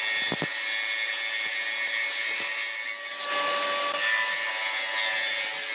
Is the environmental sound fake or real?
real